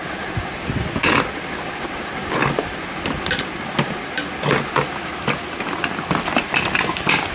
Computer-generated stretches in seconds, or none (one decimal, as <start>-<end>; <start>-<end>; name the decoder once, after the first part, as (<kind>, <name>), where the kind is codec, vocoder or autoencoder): none